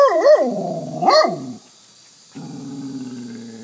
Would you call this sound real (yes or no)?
yes